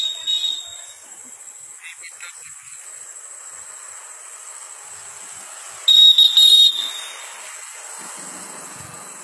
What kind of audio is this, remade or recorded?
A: recorded